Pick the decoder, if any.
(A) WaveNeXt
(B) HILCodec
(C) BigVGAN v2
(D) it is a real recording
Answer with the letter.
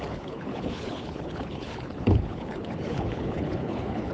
B